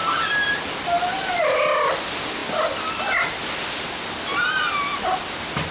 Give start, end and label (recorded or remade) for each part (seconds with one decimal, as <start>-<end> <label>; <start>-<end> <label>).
0.0-5.7 recorded

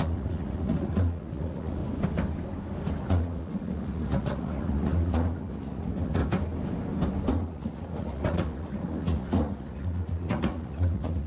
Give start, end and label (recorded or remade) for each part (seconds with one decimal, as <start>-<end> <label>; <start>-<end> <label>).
0.0-1.8 remade; 1.8-3.0 recorded; 3.0-6.2 remade; 6.2-7.3 recorded; 7.3-11.3 remade

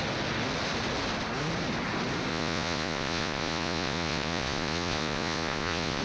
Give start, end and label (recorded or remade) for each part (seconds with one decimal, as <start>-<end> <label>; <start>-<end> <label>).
0.0-2.3 recorded; 2.3-6.0 remade